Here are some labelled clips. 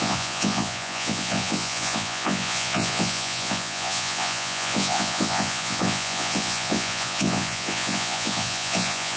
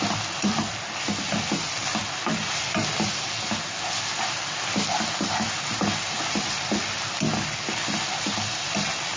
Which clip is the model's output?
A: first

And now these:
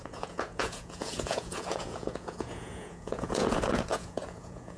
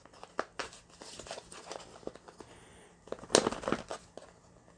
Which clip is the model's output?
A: first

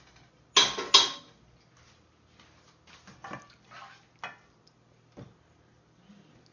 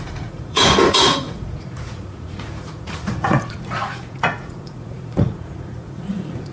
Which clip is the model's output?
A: second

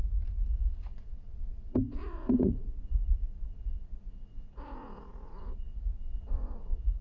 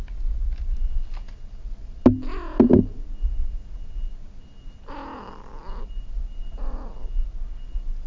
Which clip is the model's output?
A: first